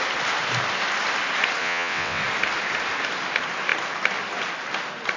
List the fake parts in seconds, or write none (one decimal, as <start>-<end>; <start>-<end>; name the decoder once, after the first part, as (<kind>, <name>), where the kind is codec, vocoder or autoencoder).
1.6-2.2 (vocoder, WaveNeXt)